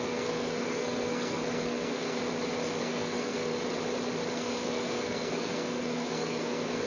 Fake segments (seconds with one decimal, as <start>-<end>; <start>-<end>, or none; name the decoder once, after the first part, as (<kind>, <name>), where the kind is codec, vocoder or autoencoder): 0.0-2.2 (codec, SNAC); 2.8-3.5; 4.3-6.9